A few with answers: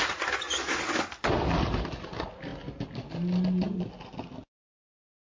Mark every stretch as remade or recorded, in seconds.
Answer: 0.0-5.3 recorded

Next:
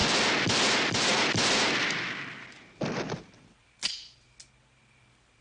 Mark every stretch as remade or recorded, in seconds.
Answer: 0.0-5.4 recorded